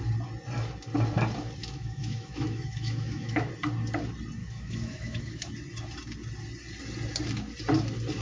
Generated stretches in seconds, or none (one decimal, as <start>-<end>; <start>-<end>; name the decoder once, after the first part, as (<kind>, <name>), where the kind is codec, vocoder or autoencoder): 1.6-3.5 (autoencoder, DAC-VAE); 4.4-5.5